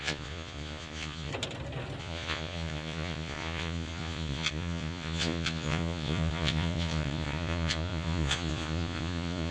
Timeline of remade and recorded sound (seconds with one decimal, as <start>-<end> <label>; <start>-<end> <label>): 0.0-1.3 remade; 1.3-2.0 recorded; 2.0-9.5 remade